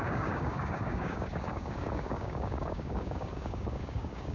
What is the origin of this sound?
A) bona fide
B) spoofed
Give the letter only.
B